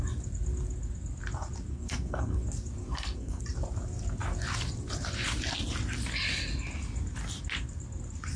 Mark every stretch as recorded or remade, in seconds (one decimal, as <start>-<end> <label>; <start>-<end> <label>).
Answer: 0.0-1.7 recorded; 1.7-2.4 remade; 2.4-2.8 recorded; 2.8-3.4 remade; 3.4-8.4 recorded